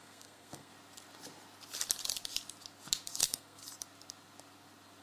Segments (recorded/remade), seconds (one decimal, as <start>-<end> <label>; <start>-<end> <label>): 0.0-0.7 remade; 0.7-3.2 recorded; 3.2-3.6 remade; 3.6-5.0 recorded